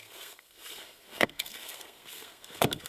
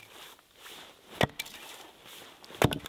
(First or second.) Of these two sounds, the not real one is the first